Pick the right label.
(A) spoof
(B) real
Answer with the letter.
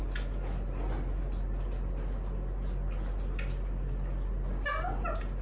B